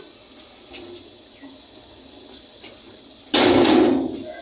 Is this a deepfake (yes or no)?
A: no